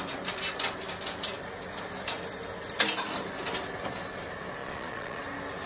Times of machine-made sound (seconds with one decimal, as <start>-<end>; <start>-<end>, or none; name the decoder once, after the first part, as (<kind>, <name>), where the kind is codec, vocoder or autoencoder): 4.6-5.2 (vocoder, Vocos)